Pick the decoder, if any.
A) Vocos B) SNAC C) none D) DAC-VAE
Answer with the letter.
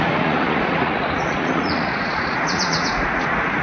A